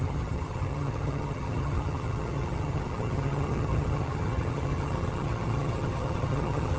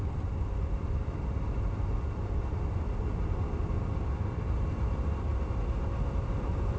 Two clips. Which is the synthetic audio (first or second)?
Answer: first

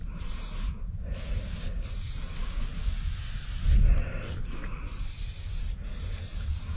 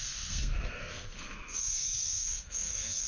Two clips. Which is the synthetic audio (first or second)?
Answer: second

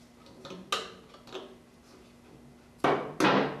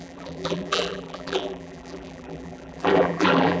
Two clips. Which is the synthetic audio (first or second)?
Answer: second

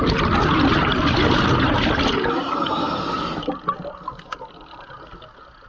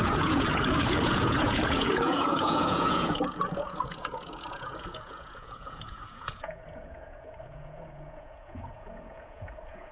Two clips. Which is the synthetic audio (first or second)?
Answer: second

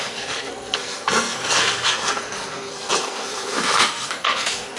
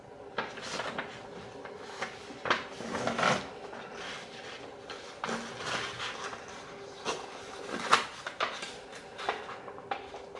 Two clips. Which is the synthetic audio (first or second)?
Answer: first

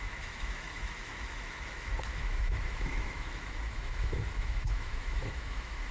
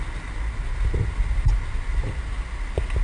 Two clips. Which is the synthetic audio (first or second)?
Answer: first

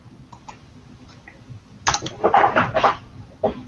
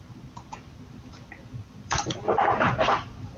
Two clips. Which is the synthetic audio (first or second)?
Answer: second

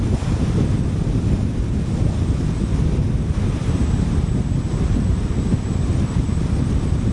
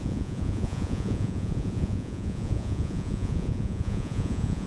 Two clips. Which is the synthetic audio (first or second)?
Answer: second